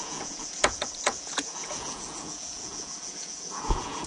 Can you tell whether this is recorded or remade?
remade